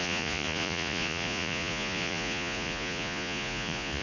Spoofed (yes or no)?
yes